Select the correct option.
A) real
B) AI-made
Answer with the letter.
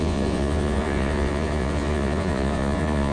B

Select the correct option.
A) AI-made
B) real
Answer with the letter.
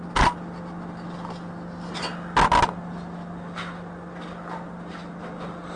B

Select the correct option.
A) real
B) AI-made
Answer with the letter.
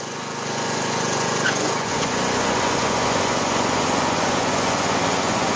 B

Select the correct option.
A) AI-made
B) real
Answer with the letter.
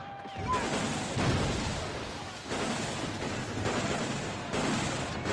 B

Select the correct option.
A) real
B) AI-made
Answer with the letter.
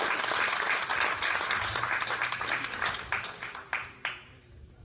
A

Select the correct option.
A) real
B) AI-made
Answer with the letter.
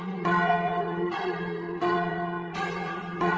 B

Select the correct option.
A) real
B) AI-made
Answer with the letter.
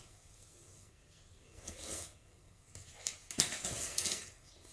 B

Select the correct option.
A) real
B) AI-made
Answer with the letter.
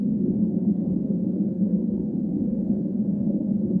B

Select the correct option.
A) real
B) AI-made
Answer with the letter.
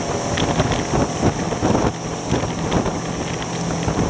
A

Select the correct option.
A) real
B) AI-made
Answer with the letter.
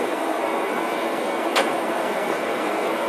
B